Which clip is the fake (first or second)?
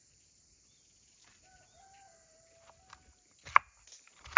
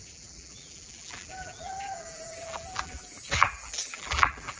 second